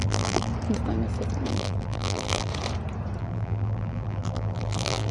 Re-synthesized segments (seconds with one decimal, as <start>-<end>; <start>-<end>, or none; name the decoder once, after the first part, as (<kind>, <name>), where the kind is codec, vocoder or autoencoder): 0.0-0.5 (vocoder, BigVGAN v2); 1.5-2.5; 3.2-5.1